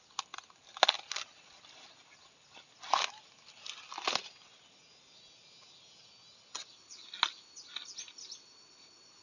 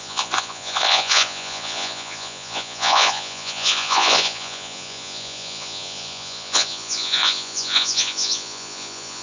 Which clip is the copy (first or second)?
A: second